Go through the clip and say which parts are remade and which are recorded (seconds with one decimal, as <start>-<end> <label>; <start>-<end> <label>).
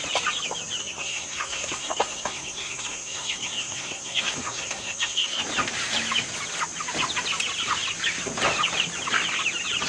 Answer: 0.0-0.8 recorded; 0.8-5.4 remade; 5.4-9.9 recorded